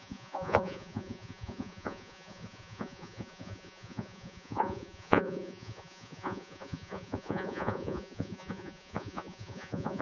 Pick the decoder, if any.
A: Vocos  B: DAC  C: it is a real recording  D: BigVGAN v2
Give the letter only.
A